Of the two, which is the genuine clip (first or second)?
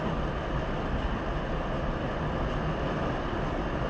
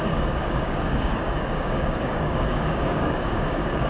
first